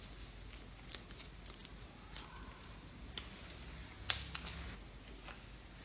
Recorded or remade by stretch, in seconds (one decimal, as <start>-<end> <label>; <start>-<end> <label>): 0.0-5.8 recorded